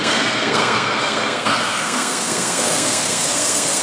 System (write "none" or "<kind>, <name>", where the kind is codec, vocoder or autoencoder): codec, SNAC